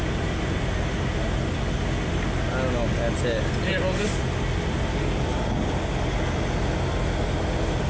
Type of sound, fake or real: real